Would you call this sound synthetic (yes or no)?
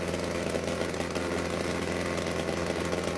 no